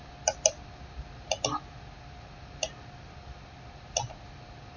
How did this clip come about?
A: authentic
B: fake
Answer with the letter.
A